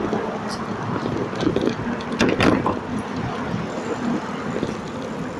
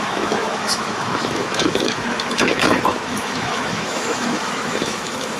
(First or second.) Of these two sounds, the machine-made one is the second